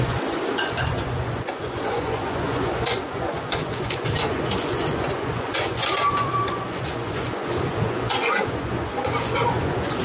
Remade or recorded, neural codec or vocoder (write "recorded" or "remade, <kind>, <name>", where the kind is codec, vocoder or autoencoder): remade, vocoder, Vocos